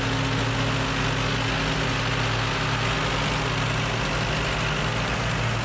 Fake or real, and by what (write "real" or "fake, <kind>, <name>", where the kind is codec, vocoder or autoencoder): real